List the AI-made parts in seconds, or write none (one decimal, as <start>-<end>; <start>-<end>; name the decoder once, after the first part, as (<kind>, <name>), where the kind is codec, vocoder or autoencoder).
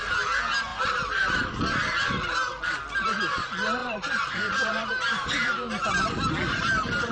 0.7-1.6 (vocoder, BigVGAN v2); 3.8-5.7